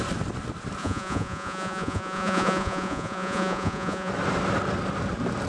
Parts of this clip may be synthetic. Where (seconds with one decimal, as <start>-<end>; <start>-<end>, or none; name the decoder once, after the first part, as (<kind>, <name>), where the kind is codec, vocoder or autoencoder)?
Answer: 0.8-4.1 (vocoder, Vocos)